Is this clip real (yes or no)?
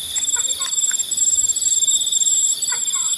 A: yes